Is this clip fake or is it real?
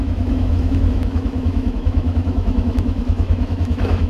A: fake